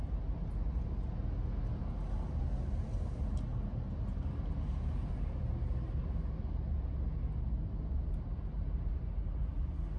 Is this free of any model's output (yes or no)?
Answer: yes